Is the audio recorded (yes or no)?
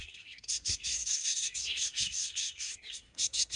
no